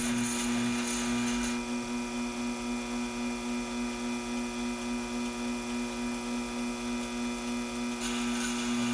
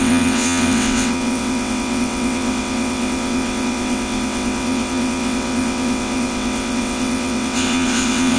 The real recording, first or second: first